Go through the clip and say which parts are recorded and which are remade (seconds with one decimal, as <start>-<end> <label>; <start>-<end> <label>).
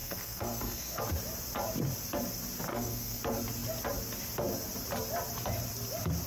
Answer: 0.0-1.0 remade; 1.0-2.7 recorded; 2.7-3.2 remade; 3.2-6.3 recorded